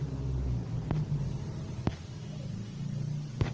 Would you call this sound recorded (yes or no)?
yes